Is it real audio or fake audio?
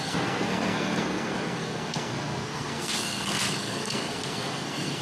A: fake